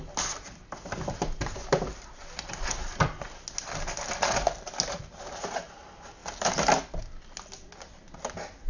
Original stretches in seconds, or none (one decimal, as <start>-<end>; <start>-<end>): 0.0-8.7